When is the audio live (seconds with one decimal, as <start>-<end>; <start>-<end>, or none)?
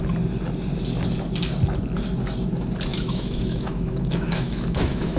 0.0-2.9